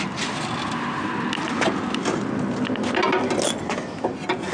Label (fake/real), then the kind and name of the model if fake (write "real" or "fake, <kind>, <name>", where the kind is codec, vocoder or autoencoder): real